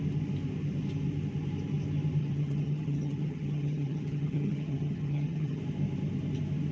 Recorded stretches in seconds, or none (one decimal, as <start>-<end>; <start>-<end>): 0.0-2.2; 5.6-6.7